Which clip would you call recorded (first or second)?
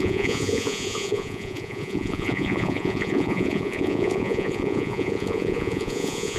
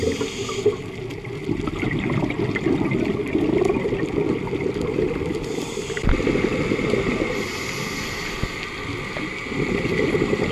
second